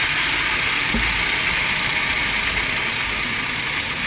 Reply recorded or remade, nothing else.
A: recorded